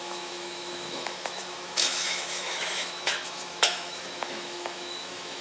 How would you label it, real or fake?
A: fake